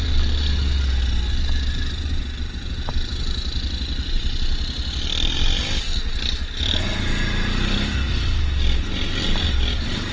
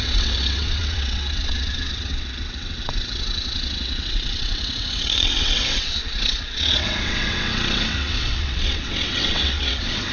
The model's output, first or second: second